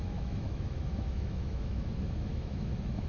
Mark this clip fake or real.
fake